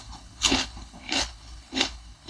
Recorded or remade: remade